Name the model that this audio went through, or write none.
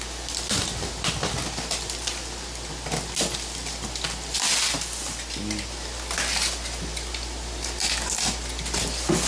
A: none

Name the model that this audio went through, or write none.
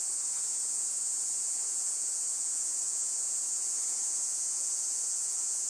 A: vocoder, Vocos